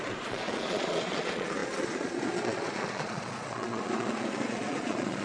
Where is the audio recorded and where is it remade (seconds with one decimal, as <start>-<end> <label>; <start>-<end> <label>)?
0.0-5.2 remade